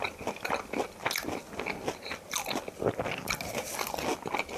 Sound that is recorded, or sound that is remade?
recorded